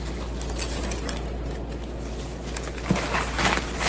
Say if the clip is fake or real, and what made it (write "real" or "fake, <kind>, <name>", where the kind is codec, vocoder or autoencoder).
real